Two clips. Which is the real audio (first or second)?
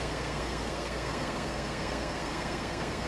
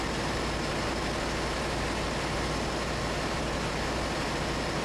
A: second